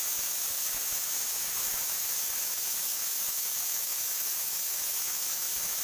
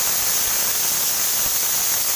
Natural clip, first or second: second